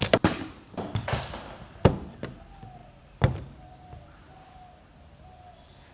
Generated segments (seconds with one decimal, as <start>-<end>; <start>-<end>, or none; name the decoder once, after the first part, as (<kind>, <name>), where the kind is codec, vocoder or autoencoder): none